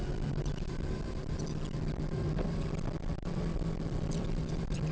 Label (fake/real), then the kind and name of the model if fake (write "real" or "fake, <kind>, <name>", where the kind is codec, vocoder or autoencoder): fake, vocoder, BigVGAN v2